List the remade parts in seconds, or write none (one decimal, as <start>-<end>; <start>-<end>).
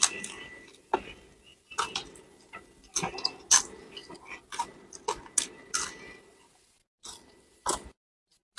none